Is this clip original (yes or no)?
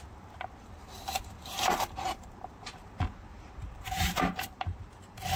no